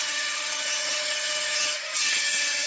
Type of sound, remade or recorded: remade